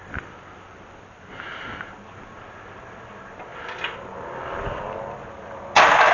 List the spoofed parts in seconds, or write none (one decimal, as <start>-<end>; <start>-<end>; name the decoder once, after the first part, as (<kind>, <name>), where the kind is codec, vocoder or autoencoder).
none